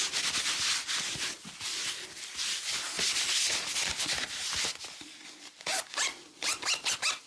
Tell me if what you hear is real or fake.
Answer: real